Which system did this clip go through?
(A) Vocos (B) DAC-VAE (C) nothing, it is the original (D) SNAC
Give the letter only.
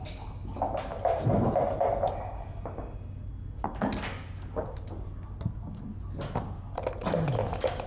C